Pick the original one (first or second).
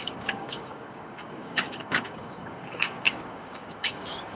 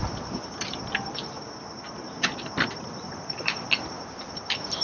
second